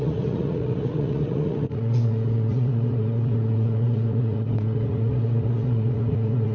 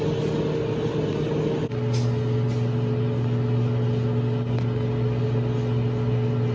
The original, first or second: second